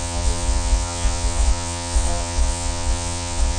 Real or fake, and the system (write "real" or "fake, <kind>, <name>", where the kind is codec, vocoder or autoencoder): fake, vocoder, Vocos